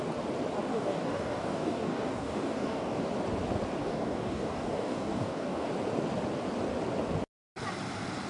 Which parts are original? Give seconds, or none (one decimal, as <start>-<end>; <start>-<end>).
0.0-0.7; 3.0-3.8; 5.7-8.3